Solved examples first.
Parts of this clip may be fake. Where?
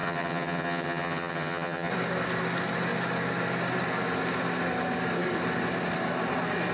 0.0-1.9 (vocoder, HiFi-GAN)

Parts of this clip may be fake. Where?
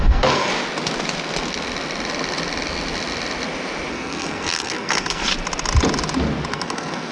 0.0-0.5 (codec, SNAC); 3.9-5.3; 6.5-7.1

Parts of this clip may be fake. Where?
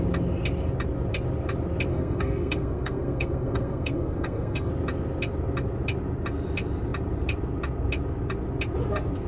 1.9-4.7 (codec, SNAC)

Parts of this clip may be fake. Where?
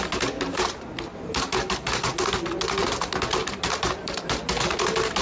3.4-4.5 (vocoder, BigVGAN v2)